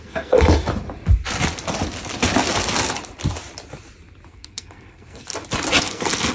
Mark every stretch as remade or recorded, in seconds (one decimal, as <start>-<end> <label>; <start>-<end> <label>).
0.0-0.5 remade; 0.5-4.3 recorded; 4.3-5.3 remade; 5.3-5.8 recorded; 5.8-6.3 remade